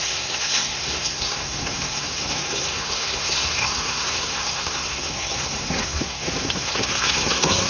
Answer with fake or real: fake